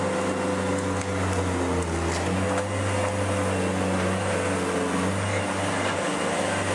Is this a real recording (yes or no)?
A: yes